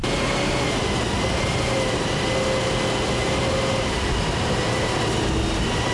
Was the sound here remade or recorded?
recorded